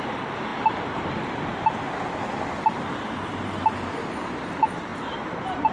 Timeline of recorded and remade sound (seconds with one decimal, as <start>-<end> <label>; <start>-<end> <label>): 0.0-4.9 recorded; 4.9-5.7 remade